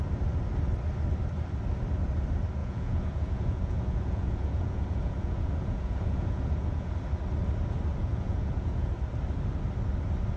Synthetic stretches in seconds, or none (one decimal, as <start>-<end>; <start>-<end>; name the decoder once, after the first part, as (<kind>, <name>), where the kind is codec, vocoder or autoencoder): 2.6-6.9 (vocoder, Vocos); 7.9-8.9